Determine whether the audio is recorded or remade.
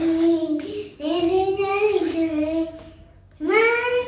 remade